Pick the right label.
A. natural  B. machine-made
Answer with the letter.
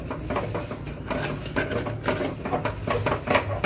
A